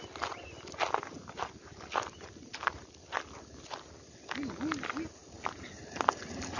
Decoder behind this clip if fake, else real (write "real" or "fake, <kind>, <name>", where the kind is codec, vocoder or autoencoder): real